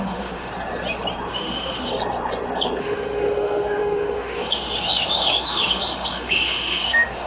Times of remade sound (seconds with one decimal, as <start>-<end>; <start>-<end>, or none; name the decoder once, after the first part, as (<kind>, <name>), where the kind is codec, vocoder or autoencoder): 0.0-0.5 (autoencoder, DAC-VAE); 1.3-1.9; 2.8-7.3